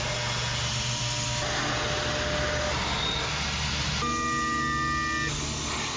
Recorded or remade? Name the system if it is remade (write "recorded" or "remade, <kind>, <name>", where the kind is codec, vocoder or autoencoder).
recorded